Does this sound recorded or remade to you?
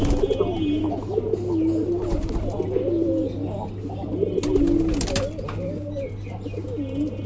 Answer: recorded